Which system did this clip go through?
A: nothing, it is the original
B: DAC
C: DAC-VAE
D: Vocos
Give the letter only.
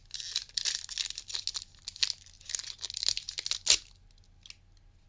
A